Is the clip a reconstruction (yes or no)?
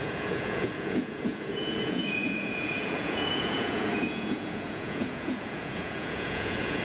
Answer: yes